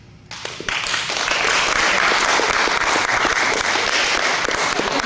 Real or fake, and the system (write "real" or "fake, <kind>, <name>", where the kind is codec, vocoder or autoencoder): real